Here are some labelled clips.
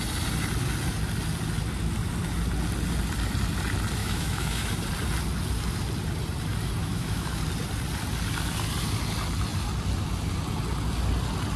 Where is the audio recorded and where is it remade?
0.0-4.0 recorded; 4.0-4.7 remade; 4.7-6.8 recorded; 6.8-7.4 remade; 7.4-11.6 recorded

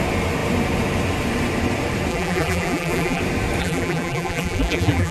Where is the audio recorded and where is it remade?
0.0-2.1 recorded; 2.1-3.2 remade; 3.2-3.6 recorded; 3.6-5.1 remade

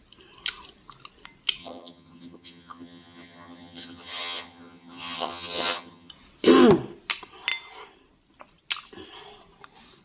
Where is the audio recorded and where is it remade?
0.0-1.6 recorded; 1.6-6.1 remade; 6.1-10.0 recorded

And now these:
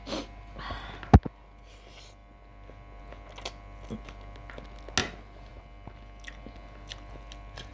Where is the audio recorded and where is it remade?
0.0-7.7 recorded